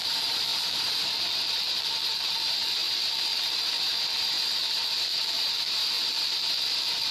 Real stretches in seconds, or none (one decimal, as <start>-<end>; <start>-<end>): none